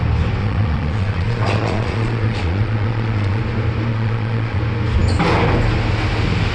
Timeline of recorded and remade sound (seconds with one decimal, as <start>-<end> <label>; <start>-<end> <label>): 0.0-0.4 recorded; 0.4-3.4 remade; 3.4-3.9 recorded; 3.9-4.6 remade; 4.6-6.5 recorded